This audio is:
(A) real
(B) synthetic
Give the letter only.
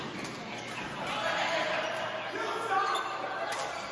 A